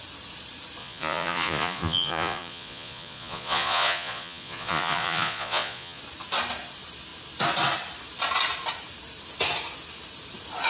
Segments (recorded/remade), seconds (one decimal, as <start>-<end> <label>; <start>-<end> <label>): 0.0-0.8 recorded; 0.8-6.0 remade; 6.0-10.7 recorded